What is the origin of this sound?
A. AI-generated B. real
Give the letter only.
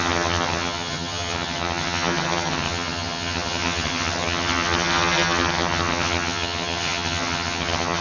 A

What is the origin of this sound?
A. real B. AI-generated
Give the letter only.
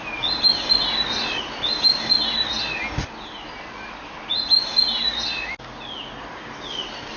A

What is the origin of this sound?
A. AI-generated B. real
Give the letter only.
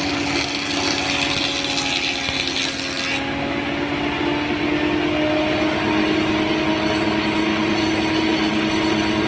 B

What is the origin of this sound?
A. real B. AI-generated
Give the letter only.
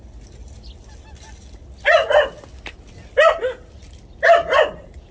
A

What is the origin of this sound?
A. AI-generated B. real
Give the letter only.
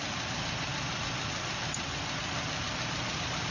B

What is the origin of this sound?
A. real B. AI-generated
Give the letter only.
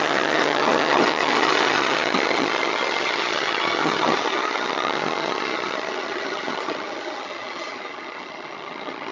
B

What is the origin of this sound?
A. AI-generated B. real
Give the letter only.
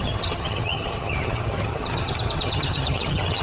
A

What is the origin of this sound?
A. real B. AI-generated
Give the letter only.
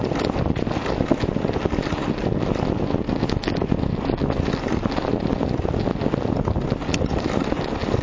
A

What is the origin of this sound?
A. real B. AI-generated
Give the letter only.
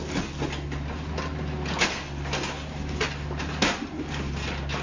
A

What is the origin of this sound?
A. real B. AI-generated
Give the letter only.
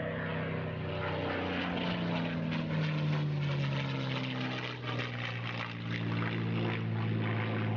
A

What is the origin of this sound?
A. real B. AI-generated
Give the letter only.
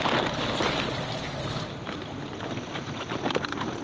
A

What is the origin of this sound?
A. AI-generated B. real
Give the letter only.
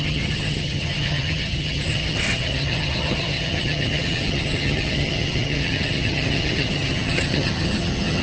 A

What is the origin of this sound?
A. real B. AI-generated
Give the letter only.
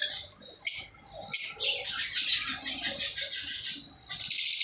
A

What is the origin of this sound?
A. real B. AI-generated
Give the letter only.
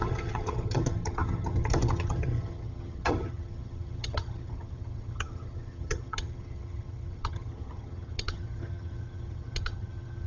B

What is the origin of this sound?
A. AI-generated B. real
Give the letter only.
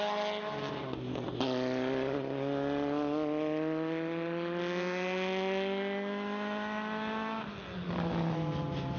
B